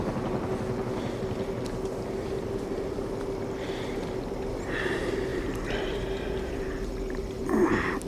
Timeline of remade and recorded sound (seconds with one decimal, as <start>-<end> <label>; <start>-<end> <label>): 0.0-5.3 recorded; 5.3-6.6 remade; 6.6-8.1 recorded